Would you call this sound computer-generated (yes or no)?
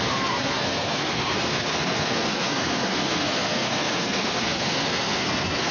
yes